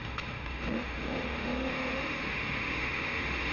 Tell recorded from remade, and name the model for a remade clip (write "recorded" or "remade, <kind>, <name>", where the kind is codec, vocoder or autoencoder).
remade, autoencoder, DAC-VAE